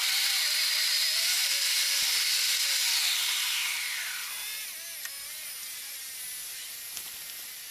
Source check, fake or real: real